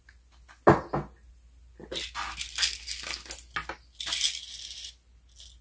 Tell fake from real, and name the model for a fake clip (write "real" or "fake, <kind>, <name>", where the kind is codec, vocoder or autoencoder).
real